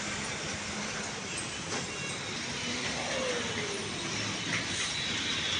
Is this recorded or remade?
recorded